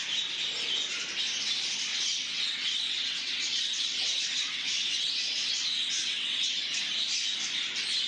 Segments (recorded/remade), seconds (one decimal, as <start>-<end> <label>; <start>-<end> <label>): 0.0-1.9 recorded; 1.9-6.8 remade; 6.8-8.1 recorded